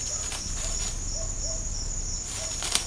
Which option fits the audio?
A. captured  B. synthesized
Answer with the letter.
A